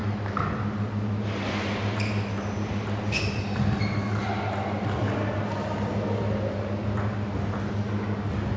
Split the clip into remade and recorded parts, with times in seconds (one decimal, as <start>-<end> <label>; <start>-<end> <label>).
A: 0.0-8.6 recorded